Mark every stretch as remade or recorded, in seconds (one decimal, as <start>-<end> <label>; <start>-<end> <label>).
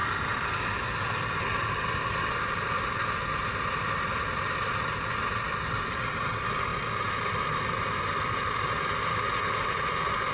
0.0-10.3 recorded